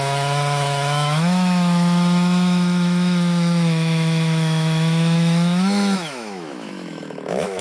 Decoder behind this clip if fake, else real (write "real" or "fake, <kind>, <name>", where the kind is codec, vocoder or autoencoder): fake, autoencoder, DAC-VAE